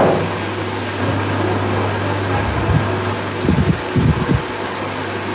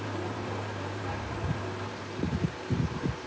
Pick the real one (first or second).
first